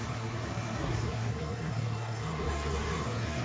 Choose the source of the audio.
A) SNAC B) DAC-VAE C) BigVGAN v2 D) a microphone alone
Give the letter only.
A